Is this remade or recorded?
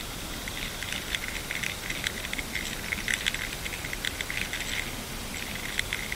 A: recorded